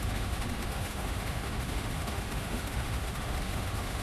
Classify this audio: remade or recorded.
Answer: remade